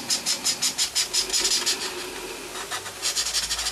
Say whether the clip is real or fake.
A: real